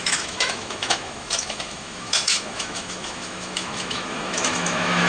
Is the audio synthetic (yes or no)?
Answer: yes